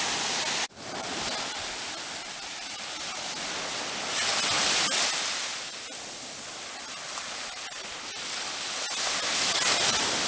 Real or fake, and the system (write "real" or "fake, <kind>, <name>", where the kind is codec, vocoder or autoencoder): real